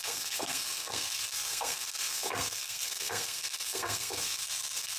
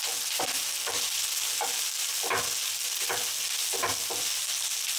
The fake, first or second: first